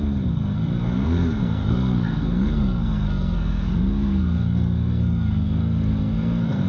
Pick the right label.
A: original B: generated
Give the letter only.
B